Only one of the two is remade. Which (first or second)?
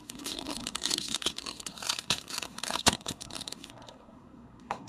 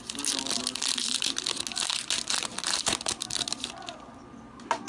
first